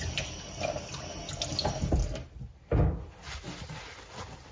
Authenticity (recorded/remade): recorded